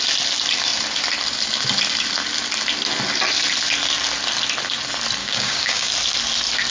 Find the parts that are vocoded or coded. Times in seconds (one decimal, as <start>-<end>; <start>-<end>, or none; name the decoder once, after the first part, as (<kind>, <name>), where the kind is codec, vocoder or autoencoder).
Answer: 5.2-5.9 (codec, DAC)